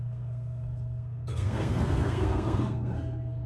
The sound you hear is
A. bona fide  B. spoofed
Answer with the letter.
B